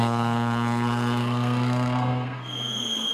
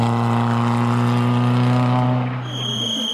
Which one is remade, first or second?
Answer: first